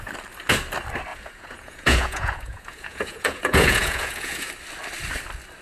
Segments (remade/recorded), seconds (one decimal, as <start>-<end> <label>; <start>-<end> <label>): 0.0-1.1 recorded; 1.1-4.5 remade; 4.5-5.6 recorded